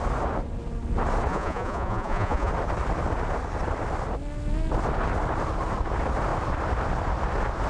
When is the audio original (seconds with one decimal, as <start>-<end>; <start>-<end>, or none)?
0.0-1.3; 2.5-7.7